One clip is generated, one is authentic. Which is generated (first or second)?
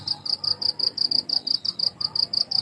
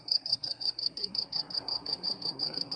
second